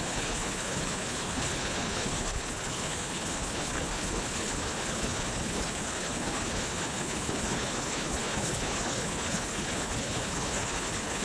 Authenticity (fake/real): fake